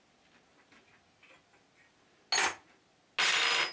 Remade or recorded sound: recorded